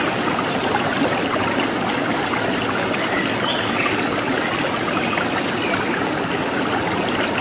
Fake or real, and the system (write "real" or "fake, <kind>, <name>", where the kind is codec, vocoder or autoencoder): real